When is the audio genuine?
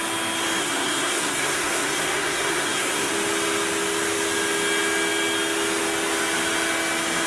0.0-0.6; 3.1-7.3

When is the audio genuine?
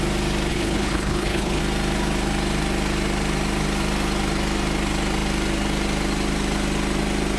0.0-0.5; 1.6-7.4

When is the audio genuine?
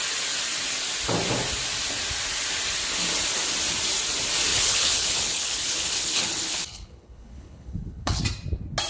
0.0-4.5; 8.2-8.9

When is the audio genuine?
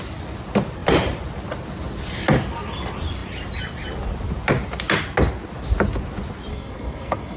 0.0-6.5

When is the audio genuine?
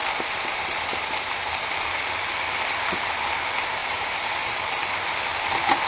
1.5-3.8; 5.0-5.9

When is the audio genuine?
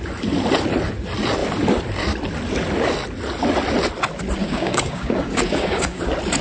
0.0-4.4; 6.0-6.4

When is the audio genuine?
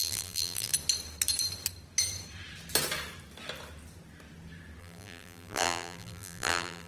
0.7-4.8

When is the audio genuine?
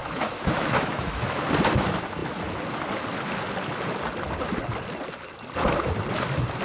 1.4-6.6